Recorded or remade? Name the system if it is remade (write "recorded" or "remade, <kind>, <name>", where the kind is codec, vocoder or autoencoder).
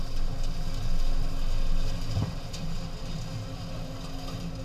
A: recorded